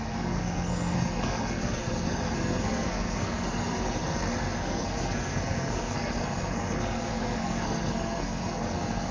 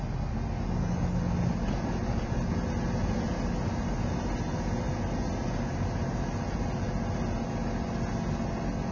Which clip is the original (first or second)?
second